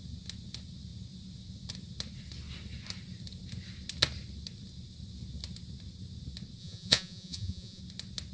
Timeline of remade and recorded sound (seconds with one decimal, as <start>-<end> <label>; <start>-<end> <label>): 0.0-6.6 recorded; 6.6-7.8 remade; 7.8-8.3 recorded